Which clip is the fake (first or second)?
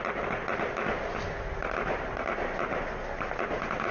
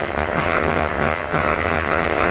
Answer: second